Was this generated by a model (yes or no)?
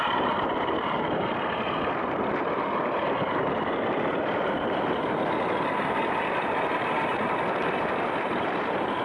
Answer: yes